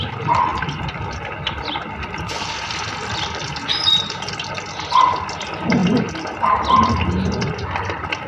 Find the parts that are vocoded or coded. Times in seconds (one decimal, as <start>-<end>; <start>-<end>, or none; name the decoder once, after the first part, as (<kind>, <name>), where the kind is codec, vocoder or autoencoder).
5.8-6.4 (vocoder, BigVGAN v2)